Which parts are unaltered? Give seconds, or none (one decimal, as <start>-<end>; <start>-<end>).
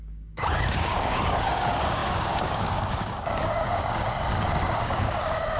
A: none